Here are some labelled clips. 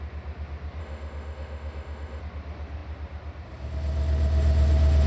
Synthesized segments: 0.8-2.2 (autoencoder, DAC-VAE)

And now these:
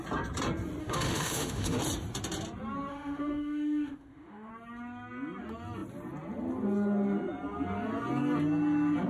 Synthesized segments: 0.8-1.8 (autoencoder, DAC-VAE); 2.9-4.5

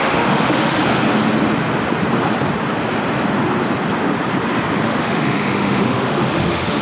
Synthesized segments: 0.0-0.8 (autoencoder, DAC-VAE); 4.9-6.8

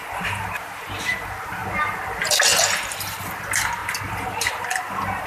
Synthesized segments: none

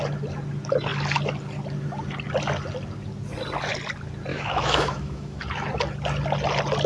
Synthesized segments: 4.3-5.4 (autoencoder, DAC-VAE)

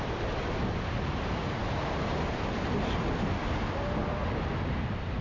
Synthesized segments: none

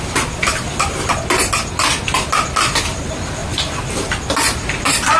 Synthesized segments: none